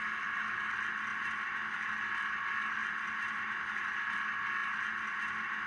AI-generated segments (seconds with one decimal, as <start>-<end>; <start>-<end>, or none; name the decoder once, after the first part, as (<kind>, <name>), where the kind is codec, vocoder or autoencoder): 0.0-2.8 (vocoder, BigVGAN v2); 3.4-4.6